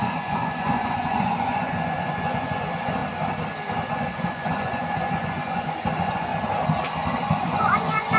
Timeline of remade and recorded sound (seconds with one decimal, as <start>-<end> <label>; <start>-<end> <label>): 0.0-3.0 remade; 3.0-3.9 recorded; 3.9-6.3 remade; 6.3-7.4 recorded; 7.4-8.2 remade